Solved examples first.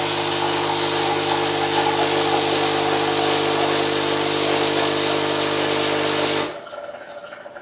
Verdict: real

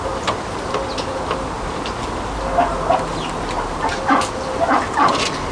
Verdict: fake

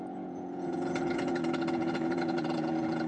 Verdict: fake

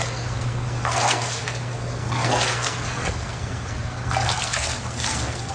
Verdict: fake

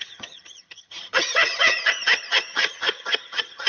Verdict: fake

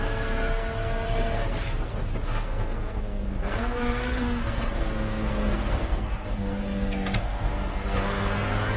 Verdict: fake